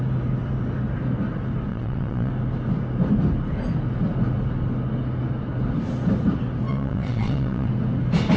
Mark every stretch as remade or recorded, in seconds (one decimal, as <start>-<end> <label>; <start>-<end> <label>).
0.0-1.7 recorded; 1.7-2.3 remade; 2.3-6.7 recorded; 6.7-7.7 remade; 7.7-8.4 recorded